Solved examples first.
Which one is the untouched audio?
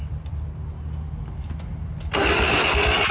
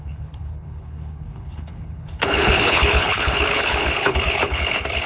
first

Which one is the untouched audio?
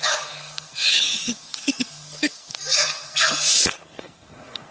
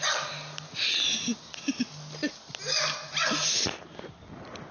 second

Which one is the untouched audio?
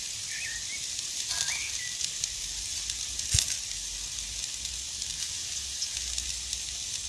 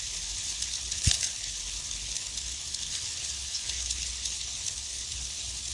first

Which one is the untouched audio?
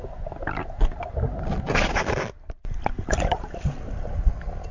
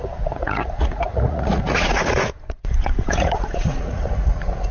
first